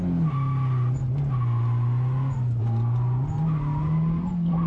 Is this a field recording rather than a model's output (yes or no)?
yes